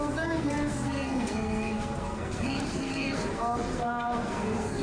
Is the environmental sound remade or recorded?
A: remade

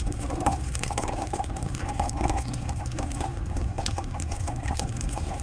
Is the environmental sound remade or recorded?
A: remade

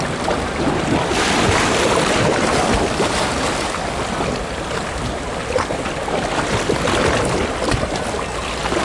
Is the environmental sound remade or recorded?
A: recorded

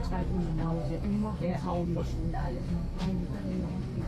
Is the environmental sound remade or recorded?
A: remade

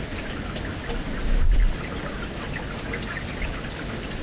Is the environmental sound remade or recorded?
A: recorded